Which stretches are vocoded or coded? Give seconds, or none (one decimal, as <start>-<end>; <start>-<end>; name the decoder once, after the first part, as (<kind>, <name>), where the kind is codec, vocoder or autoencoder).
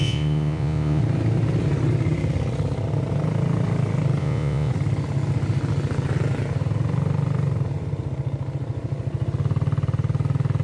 0.0-1.0 (vocoder, Vocos); 4.2-4.7